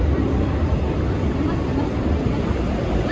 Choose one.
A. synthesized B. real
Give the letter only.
B